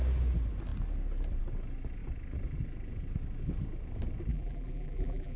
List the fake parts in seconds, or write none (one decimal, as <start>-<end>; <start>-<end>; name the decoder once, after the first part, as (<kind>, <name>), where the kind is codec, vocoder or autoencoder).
4.3-5.4 (vocoder, BigVGAN v2)